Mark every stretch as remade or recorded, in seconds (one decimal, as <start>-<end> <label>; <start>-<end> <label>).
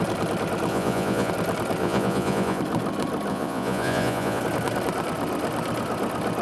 0.0-0.7 recorded; 0.7-1.3 remade; 1.3-1.8 recorded; 1.8-2.6 remade; 2.6-3.3 recorded; 3.3-4.4 remade; 4.4-6.4 recorded